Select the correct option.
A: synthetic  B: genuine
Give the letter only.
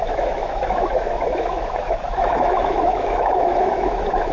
A